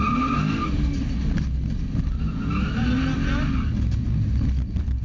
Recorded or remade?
recorded